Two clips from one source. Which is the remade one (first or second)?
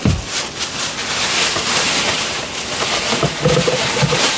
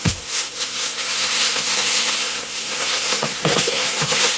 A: second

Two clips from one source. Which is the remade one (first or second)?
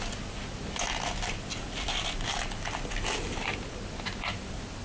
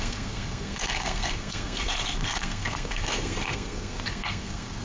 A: second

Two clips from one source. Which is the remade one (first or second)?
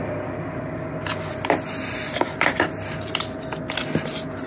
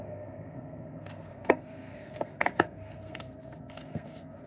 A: second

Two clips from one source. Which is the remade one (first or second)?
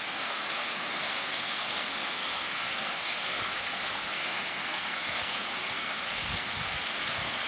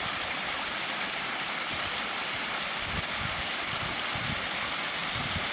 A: first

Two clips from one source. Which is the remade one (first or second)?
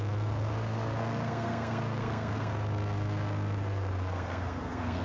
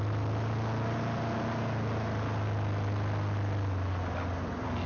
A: first